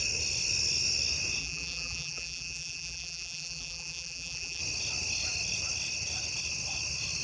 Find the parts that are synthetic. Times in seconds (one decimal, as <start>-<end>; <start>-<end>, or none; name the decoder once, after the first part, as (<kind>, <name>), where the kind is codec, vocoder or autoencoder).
1.4-4.6 (vocoder, BigVGAN v2)